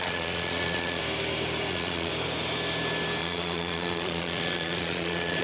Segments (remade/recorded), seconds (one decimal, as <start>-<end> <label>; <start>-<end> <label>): 0.0-1.0 remade; 1.0-1.7 recorded; 1.7-2.1 remade; 2.1-3.2 recorded; 3.2-5.4 remade